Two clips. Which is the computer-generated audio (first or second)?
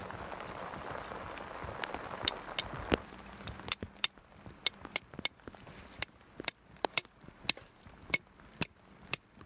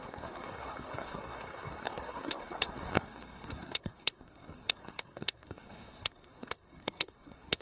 second